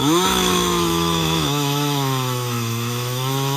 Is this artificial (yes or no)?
yes